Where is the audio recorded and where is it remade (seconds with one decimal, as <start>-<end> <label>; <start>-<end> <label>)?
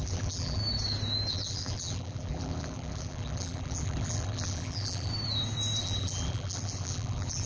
0.0-0.6 remade; 0.6-1.3 recorded; 1.3-5.1 remade; 5.1-5.8 recorded; 5.8-7.5 remade